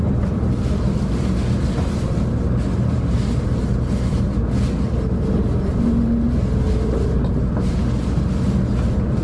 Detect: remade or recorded recorded